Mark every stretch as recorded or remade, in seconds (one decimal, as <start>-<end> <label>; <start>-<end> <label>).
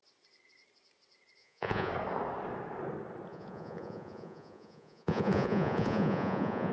0.0-1.4 recorded; 1.4-1.9 remade; 1.9-3.3 recorded; 3.3-6.7 remade